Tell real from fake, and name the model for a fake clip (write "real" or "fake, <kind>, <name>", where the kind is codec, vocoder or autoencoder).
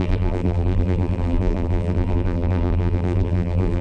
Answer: fake, vocoder, BigVGAN v2